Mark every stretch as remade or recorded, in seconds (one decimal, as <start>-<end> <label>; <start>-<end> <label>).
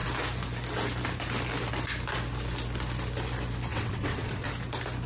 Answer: 0.0-3.7 recorded; 3.7-4.5 remade; 4.5-5.1 recorded